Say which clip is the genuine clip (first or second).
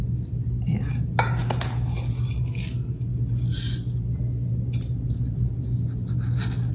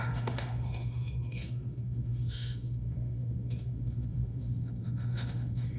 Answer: first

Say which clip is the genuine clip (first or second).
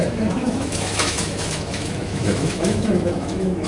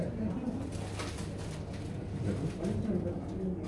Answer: second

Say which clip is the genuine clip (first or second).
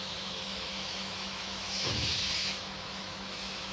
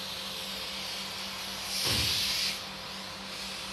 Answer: second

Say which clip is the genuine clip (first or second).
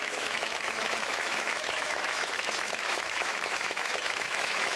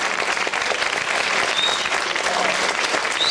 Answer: second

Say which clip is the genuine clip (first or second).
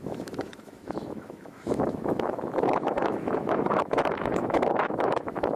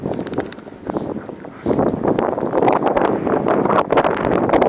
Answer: second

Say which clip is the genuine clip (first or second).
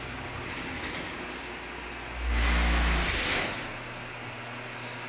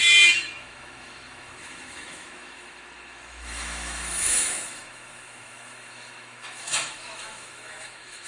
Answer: first